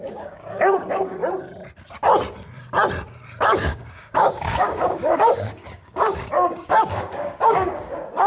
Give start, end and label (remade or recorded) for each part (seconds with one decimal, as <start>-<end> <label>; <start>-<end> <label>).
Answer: 0.0-1.2 remade; 1.2-3.4 recorded; 3.4-8.3 remade